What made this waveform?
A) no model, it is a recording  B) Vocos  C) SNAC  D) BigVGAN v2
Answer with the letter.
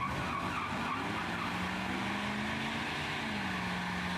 A